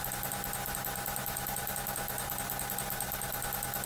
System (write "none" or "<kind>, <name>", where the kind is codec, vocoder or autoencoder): none